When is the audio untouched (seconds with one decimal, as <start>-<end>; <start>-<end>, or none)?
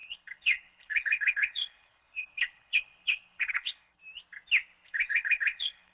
4.0-4.9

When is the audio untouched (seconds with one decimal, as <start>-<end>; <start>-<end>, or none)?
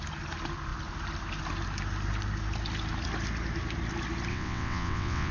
0.0-4.3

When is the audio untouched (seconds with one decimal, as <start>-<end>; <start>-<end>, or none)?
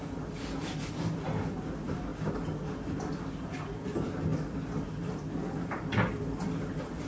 0.0-7.1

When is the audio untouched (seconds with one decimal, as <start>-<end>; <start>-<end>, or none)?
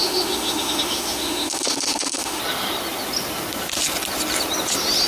2.4-5.1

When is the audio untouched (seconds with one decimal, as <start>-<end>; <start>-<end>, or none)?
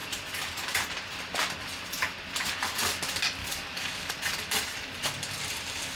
0.0-3.4; 4.1-6.0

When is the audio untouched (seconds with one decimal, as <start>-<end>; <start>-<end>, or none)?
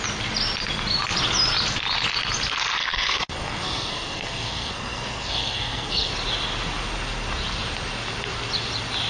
0.0-2.8; 6.1-9.1